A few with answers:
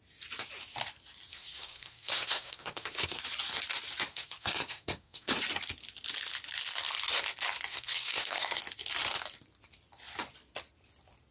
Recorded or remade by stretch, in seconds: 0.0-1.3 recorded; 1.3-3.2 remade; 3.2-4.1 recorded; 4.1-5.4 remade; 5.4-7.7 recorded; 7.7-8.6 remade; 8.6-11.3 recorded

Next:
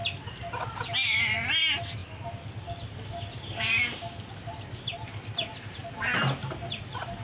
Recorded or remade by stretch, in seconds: 0.0-7.2 recorded

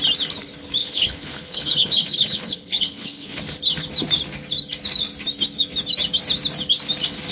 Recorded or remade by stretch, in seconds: 0.0-0.8 recorded; 0.8-3.4 remade; 3.4-7.3 recorded

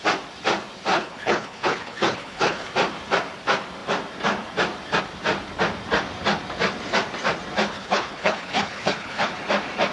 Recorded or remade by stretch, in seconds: 0.0-0.9 recorded; 0.9-2.7 remade; 2.7-7.7 recorded; 7.7-9.3 remade; 9.3-9.9 recorded

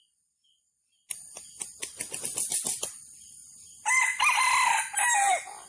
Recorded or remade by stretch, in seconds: 0.0-5.7 recorded

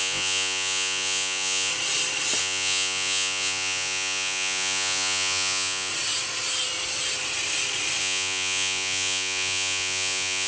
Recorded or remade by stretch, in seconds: 0.0-1.7 remade; 1.7-2.4 recorded; 2.4-5.9 remade; 5.9-8.0 recorded; 8.0-10.5 remade